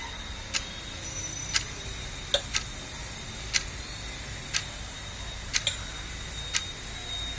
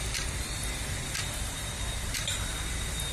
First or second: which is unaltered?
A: first